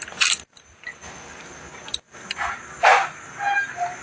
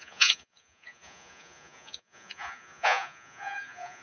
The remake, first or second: second